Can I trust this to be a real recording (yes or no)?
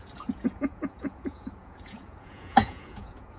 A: no